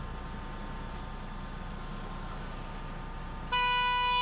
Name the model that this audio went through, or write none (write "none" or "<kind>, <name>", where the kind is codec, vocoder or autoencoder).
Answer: none